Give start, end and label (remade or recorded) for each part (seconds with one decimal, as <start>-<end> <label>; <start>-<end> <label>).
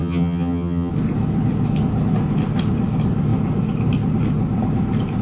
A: 0.0-0.9 remade; 0.9-5.2 recorded